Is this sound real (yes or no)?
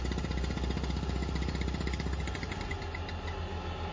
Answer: yes